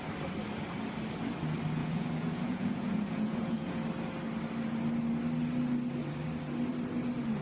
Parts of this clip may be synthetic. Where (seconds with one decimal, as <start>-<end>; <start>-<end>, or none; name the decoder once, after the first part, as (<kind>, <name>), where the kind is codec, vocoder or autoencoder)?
1.8-3.7 (vocoder, Vocos)